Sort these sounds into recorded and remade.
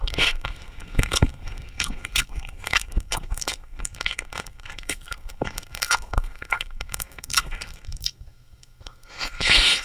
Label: remade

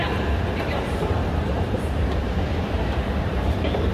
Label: remade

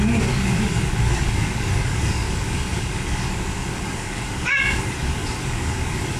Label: remade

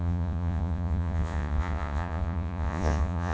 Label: remade